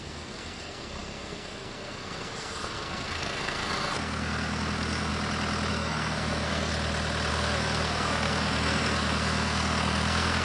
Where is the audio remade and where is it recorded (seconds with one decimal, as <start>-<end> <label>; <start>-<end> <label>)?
0.0-5.1 remade; 5.1-5.7 recorded; 5.7-6.7 remade; 6.7-7.3 recorded; 7.3-10.4 remade